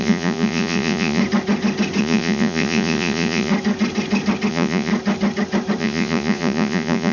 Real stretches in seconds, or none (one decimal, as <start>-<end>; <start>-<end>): 1.2-2.0; 3.5-4.5; 4.9-5.8

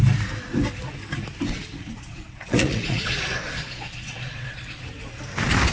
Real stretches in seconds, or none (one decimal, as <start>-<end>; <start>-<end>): 0.0-1.8; 5.2-5.7

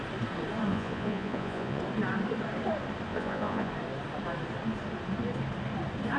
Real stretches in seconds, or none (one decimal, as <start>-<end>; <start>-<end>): 0.0-0.7; 1.8-3.1; 3.7-6.2

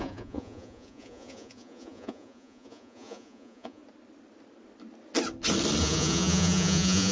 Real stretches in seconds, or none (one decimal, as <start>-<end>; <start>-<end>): 3.8-5.8

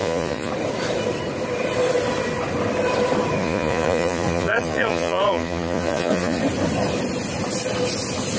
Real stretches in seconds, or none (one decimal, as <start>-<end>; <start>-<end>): 0.5-3.4; 6.4-8.4

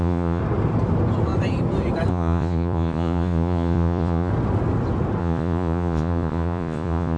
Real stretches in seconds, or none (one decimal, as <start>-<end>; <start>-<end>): 0.4-2.1; 4.3-5.2